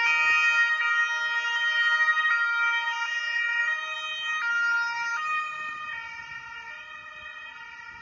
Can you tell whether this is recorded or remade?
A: recorded